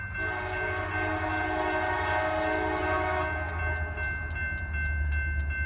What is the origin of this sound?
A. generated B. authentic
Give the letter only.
B